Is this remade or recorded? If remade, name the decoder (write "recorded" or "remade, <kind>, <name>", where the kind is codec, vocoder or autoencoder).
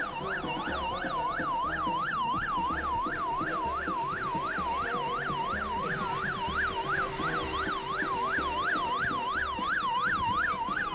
recorded